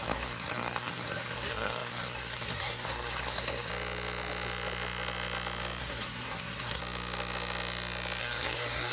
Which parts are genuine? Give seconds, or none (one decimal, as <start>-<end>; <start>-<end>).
3.7-5.8; 6.8-8.2